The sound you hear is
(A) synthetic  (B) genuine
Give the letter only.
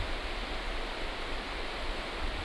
B